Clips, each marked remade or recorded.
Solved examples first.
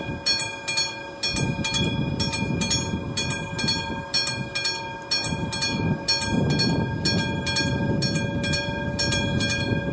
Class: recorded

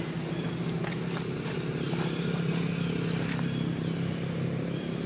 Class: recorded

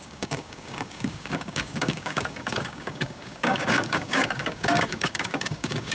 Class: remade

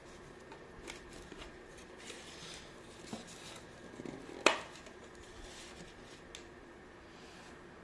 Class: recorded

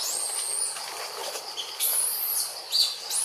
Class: recorded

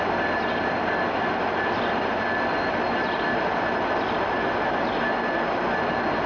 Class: recorded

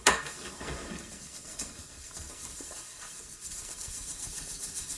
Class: remade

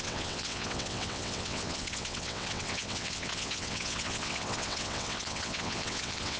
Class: remade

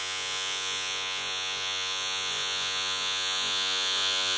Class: remade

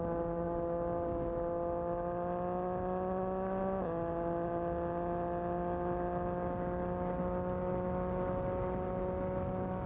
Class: recorded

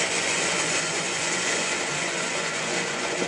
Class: remade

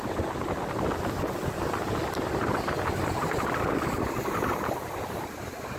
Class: recorded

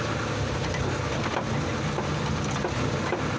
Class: recorded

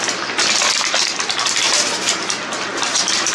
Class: recorded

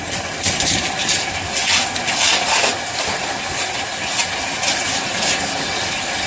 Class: recorded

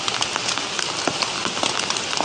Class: recorded